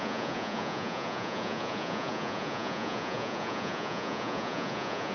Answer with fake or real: fake